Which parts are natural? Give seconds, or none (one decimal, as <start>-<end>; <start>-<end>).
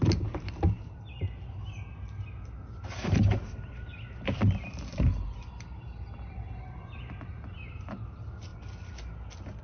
0.0-9.6